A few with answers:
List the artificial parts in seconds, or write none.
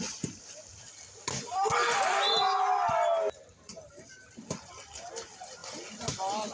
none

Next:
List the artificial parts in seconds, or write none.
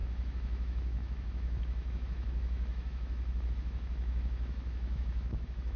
0.0-5.8 (autoencoder, DAC-VAE)